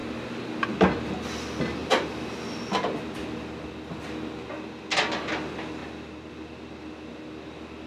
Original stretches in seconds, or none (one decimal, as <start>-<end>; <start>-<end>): 0.0-7.9